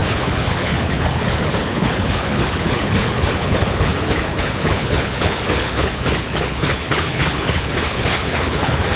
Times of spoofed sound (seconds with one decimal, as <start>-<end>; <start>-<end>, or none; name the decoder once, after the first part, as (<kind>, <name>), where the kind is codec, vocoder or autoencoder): 0.0-9.0 (codec, HILCodec)

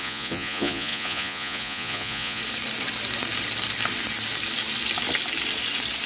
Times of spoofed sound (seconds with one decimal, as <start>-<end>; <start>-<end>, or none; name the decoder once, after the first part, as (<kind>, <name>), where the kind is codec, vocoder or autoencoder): 0.0-2.4 (vocoder, Vocos)

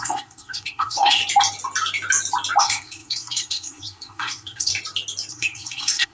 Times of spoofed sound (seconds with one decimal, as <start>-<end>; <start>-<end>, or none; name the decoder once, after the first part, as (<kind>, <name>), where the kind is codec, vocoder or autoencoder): 0.0-1.2 (codec, SNAC); 2.6-4.7; 5.3-6.1

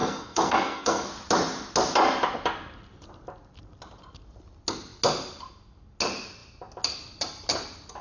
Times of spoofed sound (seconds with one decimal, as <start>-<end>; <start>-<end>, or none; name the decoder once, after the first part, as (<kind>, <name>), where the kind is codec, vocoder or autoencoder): 0.0-1.1 (codec, SNAC)

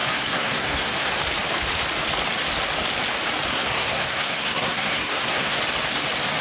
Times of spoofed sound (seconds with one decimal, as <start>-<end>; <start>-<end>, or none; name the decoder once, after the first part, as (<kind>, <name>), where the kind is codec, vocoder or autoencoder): 0.0-1.1 (codec, SNAC); 3.5-5.6

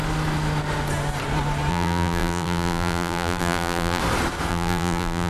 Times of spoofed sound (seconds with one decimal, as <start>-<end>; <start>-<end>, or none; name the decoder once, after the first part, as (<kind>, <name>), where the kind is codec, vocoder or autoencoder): 1.7-4.0 (vocoder, BigVGAN v2); 4.5-5.3

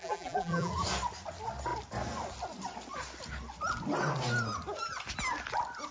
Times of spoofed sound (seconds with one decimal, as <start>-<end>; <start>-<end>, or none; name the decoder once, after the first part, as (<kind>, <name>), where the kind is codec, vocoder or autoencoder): 0.0-0.7 (vocoder, BigVGAN v2)